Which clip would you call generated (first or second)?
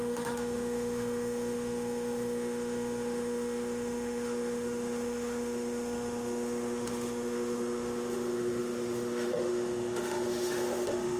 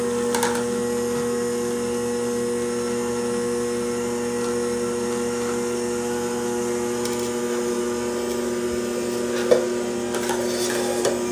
first